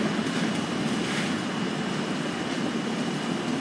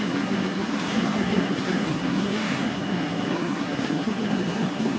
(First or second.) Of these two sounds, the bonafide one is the first